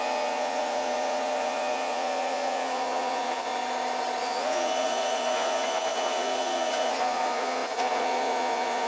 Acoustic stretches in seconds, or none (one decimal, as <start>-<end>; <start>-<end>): 3.5-4.2